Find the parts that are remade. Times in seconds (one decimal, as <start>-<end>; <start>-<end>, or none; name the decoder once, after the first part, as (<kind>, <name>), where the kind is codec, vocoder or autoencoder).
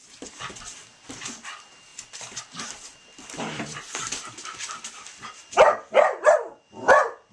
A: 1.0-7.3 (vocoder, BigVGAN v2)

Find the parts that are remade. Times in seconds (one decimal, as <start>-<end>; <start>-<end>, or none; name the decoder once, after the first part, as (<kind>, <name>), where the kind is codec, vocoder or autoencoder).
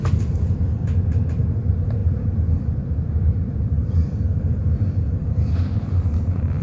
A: 0.0-0.8 (vocoder, BigVGAN v2); 1.6-6.6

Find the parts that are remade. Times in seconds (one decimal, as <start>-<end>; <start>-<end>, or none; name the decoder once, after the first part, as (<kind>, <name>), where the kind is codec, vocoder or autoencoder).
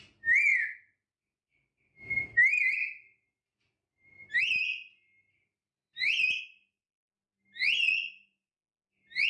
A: 0.5-4.4 (vocoder, BigVGAN v2); 5.6-6.4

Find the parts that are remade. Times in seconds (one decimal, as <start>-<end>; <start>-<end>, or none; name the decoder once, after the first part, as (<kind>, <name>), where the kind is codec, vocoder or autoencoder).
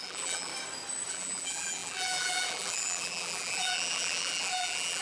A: 0.0-0.5 (vocoder, BigVGAN v2); 1.1-5.0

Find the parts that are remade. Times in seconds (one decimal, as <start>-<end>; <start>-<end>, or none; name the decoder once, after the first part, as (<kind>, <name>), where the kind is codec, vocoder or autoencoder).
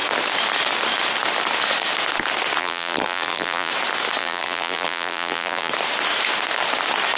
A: 2.6-3.7 (vocoder, BigVGAN v2); 4.2-5.7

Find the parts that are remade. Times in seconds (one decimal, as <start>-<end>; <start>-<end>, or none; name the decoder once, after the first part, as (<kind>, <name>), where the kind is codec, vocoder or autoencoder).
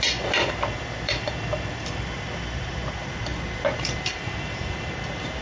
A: 0.0-5.4 (vocoder, BigVGAN v2)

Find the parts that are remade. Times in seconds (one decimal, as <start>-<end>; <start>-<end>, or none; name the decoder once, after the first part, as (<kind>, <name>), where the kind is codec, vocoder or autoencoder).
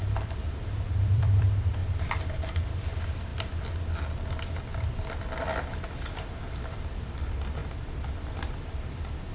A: 0.0-1.8 (vocoder, BigVGAN v2); 2.8-3.3; 7.0-9.3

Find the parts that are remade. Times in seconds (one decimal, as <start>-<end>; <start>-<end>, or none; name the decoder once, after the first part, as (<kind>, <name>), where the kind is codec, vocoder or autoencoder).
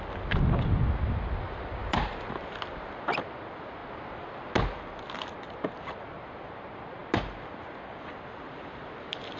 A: 1.8-2.3 (vocoder, BigVGAN v2)